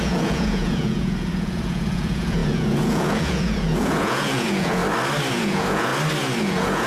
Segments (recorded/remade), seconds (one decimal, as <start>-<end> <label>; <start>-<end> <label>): 0.0-4.8 remade; 4.8-5.3 recorded; 5.3-5.9 remade; 5.9-6.4 recorded; 6.4-6.9 remade